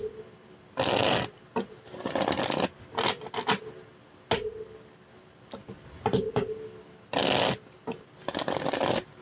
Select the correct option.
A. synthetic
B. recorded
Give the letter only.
B